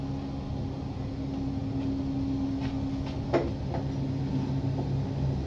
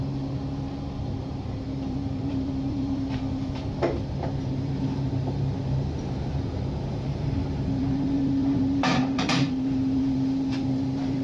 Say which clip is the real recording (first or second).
first